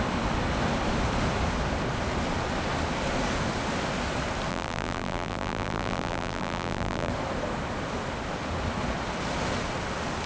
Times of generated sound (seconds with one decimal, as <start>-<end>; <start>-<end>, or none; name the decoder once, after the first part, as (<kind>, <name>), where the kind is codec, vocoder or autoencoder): 4.5-7.1 (vocoder, BigVGAN v2)